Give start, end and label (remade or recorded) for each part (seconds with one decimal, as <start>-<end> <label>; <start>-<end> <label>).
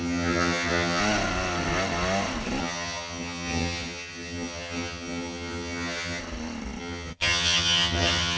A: 0.0-1.0 remade; 1.0-2.6 recorded; 2.6-6.2 remade; 6.2-6.8 recorded; 6.8-8.4 remade